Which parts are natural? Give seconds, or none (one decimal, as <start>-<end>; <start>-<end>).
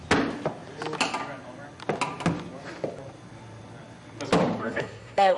0.0-4.6